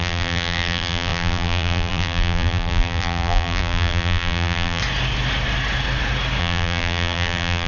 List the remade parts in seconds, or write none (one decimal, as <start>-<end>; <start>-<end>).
0.0-4.8; 6.4-7.7